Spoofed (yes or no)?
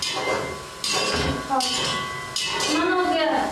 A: no